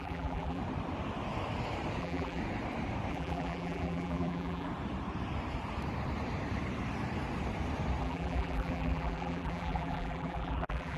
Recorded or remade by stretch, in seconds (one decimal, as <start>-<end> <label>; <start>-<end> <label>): 0.0-0.6 remade; 0.6-2.0 recorded; 2.0-2.4 remade; 2.4-3.1 recorded; 3.1-4.7 remade; 4.7-8.0 recorded; 8.0-11.0 remade